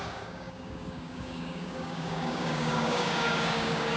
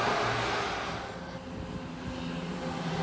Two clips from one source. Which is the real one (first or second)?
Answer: second